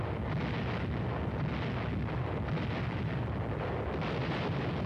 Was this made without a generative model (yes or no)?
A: yes